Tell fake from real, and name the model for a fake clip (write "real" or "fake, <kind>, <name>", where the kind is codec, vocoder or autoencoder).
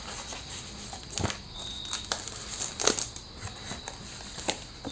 real